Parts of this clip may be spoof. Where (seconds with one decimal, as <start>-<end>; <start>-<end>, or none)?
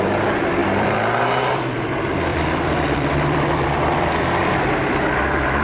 0.6-1.1; 2.3-4.6